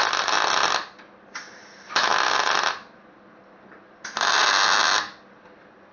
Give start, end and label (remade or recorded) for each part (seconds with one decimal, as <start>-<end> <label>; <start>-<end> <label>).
0.0-5.9 recorded